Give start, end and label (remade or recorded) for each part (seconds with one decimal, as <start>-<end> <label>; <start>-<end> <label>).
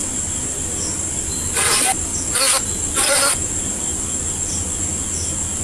0.0-5.6 recorded